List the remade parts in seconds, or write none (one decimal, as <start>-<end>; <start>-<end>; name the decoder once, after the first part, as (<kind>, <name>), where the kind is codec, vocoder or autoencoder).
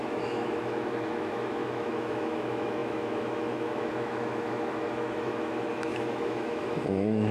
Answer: 0.0-7.3 (autoencoder, DAC-VAE)